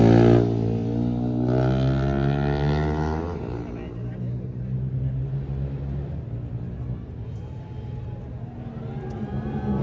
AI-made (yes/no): no